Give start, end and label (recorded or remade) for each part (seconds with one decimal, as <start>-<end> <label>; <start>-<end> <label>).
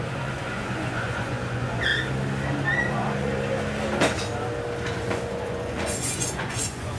0.0-1.9 remade; 1.9-2.8 recorded; 2.8-3.3 remade; 3.3-4.9 recorded; 4.9-7.0 remade